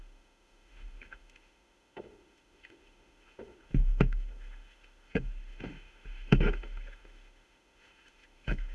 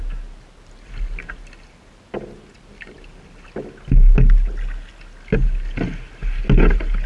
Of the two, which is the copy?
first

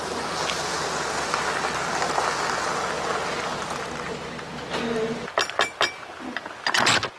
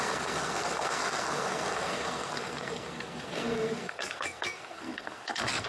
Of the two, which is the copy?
second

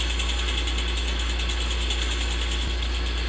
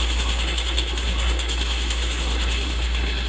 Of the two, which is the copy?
second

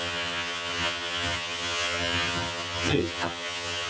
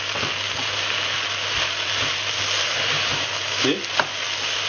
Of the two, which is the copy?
first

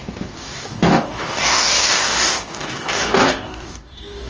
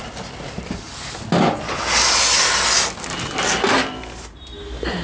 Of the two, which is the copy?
first